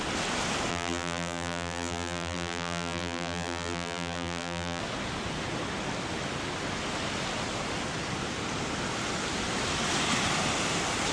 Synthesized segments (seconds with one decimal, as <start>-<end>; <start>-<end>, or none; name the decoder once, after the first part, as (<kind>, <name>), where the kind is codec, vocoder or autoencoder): 0.7-4.8 (vocoder, BigVGAN v2)